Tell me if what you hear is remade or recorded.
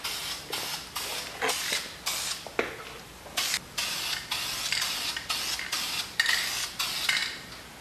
recorded